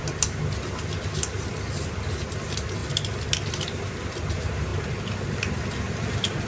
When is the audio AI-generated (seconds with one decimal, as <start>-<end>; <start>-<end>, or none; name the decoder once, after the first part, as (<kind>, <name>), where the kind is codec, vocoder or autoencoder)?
none